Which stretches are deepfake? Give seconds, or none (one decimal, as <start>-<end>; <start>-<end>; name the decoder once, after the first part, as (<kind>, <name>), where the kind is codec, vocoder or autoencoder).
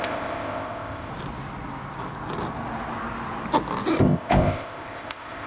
0.0-1.1 (codec, ZipCodec); 4.0-5.5